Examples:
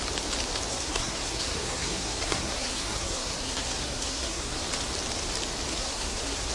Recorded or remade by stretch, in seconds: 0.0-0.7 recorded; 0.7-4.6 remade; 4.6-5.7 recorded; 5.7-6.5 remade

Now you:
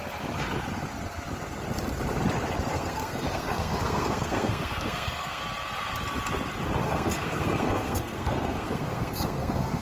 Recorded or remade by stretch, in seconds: 0.0-2.7 recorded; 2.7-5.4 remade; 5.4-6.8 recorded; 6.8-9.8 remade

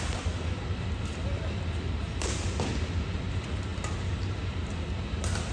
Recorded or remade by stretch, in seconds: 0.0-5.5 recorded